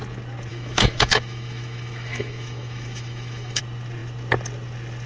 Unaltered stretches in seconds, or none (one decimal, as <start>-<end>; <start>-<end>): 0.0-0.5; 3.6-5.1